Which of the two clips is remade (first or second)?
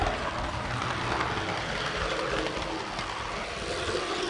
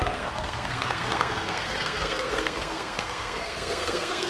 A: second